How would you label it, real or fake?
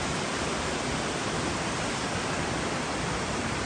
real